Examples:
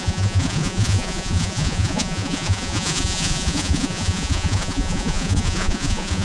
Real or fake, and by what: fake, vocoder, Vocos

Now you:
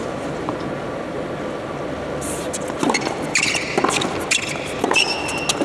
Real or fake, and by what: real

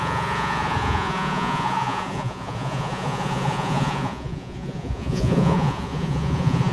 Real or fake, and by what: fake, vocoder, Vocos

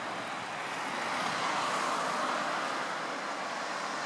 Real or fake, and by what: real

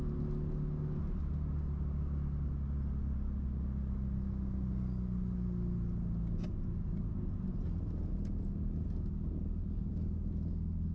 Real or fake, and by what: real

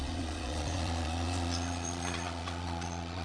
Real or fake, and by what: fake, vocoder, Vocos